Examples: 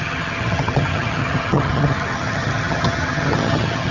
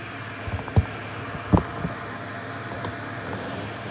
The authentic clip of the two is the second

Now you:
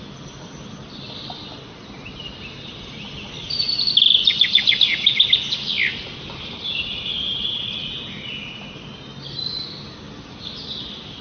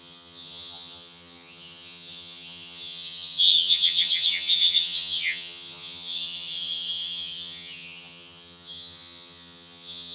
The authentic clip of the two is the first